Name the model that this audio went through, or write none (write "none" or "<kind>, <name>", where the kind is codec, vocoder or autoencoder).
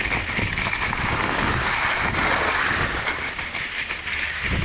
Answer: none